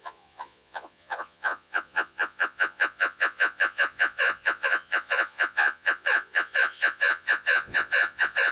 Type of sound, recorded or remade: remade